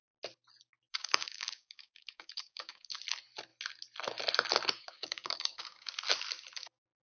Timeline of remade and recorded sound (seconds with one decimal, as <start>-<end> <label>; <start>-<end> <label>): 0.0-0.9 recorded; 0.9-3.0 remade; 3.0-4.8 recorded; 4.8-5.9 remade; 5.9-7.0 recorded